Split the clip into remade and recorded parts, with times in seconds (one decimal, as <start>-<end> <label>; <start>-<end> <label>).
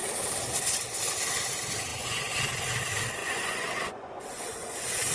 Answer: 0.0-1.9 recorded; 1.9-2.7 remade; 2.7-3.2 recorded; 3.2-5.1 remade